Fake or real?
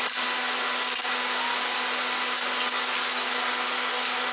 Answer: real